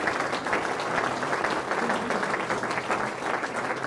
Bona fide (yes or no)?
yes